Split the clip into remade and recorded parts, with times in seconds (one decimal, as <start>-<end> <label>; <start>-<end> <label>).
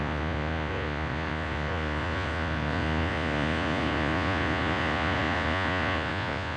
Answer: 0.0-6.6 remade